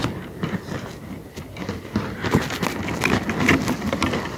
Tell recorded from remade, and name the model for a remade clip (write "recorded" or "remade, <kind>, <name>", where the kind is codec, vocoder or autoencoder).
recorded